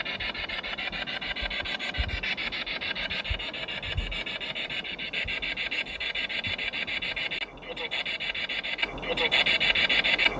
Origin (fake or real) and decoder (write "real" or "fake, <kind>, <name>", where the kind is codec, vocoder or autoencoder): real